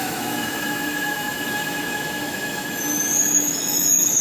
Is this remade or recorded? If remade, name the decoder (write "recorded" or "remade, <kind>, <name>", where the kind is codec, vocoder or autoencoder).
remade, autoencoder, DAC-VAE